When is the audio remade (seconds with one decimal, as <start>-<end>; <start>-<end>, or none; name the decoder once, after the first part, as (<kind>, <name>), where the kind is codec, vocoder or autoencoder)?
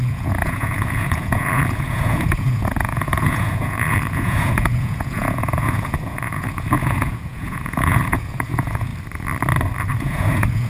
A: 0.0-8.9 (vocoder, Vocos); 10.0-10.7